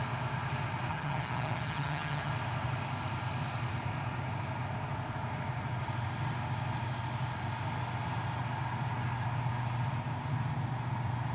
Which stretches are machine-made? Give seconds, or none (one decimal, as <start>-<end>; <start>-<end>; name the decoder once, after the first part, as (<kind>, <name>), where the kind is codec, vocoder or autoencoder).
0.9-2.3 (vocoder, HiFi-GAN)